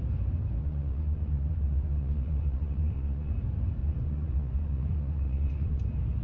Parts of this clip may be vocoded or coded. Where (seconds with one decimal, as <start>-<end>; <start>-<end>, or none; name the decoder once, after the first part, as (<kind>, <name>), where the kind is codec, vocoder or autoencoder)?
0.6-3.3 (vocoder, Vocos); 3.8-5.8